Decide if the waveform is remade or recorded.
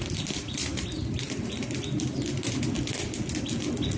recorded